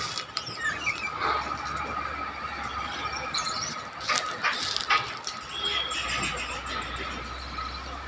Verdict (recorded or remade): recorded